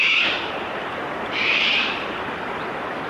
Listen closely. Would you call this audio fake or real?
fake